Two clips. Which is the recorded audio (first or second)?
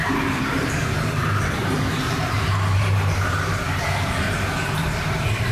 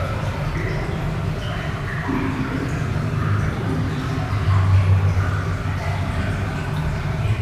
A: second